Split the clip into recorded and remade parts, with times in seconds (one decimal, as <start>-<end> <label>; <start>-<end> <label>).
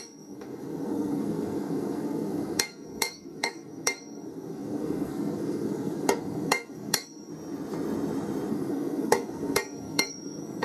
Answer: 0.0-7.3 remade; 7.3-8.5 recorded; 8.5-10.6 remade